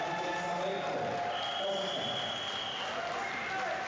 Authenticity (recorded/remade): recorded